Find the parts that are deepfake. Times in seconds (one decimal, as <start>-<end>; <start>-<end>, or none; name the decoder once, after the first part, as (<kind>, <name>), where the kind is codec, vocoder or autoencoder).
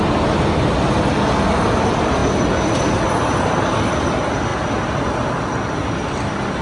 none